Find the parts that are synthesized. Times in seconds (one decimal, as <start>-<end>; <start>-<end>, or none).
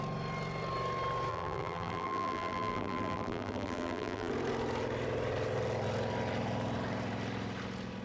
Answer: 1.3-4.3